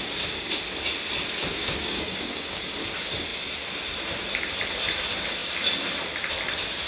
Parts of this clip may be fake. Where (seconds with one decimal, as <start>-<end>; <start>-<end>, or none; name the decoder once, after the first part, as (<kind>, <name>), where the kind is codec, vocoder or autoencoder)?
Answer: 1.5-2.6 (codec, DAC)